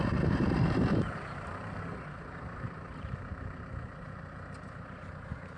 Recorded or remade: remade